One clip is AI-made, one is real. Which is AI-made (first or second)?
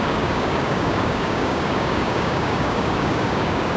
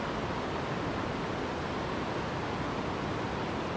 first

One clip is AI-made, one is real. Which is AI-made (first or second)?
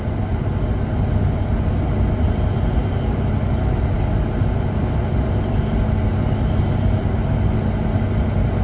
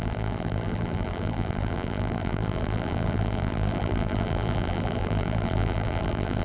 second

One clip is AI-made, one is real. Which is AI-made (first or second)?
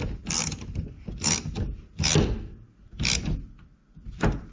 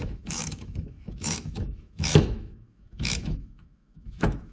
second